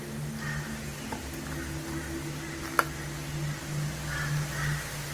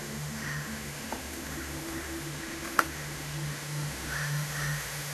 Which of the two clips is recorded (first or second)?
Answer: first